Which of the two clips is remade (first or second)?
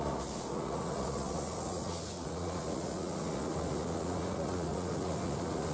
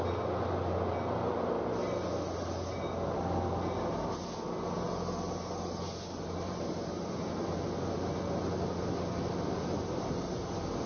first